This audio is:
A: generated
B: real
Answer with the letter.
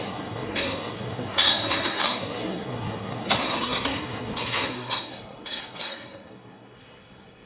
A